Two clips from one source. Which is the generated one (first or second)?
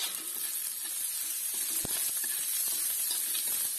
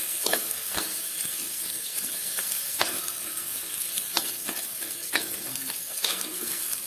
second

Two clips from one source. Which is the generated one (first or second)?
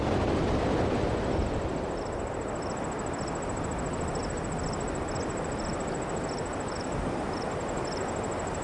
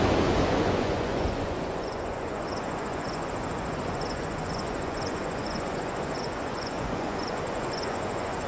second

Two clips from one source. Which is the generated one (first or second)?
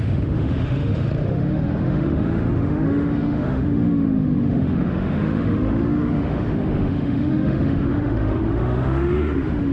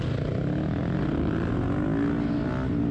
first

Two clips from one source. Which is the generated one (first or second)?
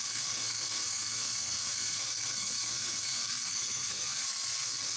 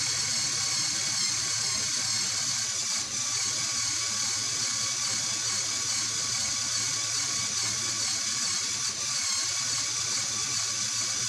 first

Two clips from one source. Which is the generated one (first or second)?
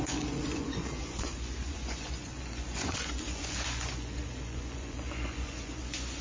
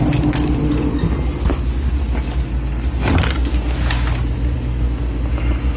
first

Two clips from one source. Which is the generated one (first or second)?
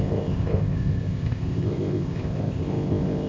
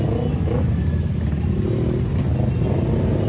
first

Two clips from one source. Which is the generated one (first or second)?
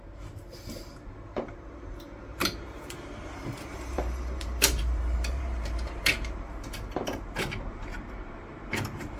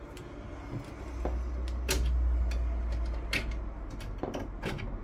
first